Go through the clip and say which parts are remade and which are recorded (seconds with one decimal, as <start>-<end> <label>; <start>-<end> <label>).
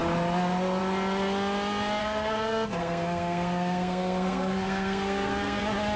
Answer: 0.0-2.0 recorded; 2.0-5.6 remade; 5.6-6.0 recorded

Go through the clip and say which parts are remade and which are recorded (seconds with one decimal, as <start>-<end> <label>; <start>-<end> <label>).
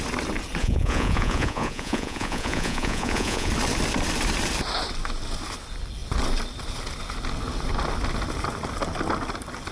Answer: 0.0-0.6 recorded; 0.6-3.5 remade; 3.5-9.7 recorded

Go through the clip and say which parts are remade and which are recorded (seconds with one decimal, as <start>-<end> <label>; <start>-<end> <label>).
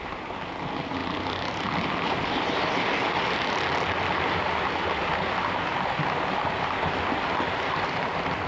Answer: 0.0-8.5 recorded